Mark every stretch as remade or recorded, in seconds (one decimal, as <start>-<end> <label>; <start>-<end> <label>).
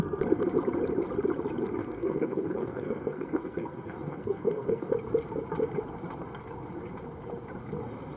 0.0-1.8 recorded; 1.8-4.9 remade; 4.9-8.2 recorded